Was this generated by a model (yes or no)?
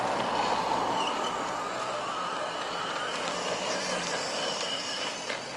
no